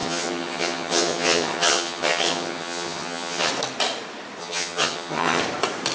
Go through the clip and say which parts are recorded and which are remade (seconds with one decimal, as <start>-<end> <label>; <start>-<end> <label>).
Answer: 0.0-3.5 remade; 3.5-4.4 recorded; 4.4-5.4 remade; 5.4-5.9 recorded